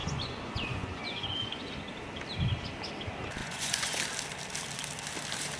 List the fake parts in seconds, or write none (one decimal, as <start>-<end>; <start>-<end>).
0.0-1.7; 3.4-4.0